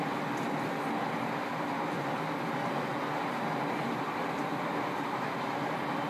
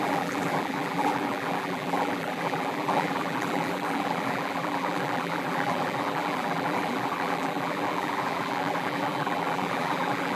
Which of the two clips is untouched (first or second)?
first